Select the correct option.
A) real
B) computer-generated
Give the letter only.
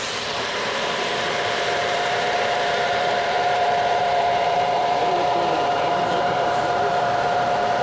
B